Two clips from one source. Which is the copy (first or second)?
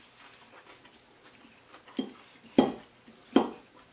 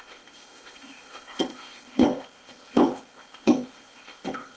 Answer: second